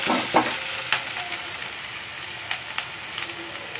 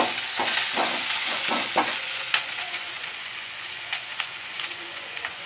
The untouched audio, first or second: first